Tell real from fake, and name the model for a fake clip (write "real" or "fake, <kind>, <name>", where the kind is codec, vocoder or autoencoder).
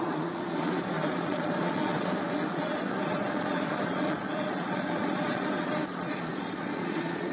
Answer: fake, vocoder, Vocos